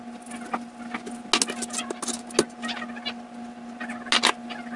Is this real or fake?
real